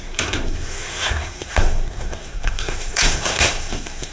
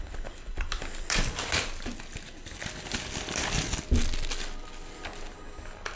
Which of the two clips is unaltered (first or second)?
second